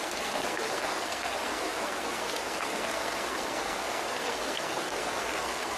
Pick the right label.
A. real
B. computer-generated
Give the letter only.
B